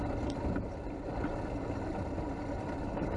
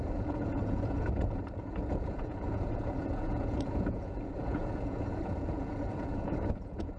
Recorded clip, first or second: first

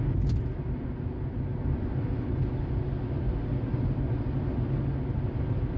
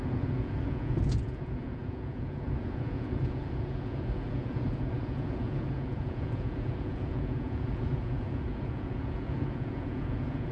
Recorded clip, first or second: first